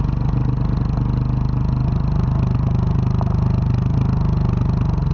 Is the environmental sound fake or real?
real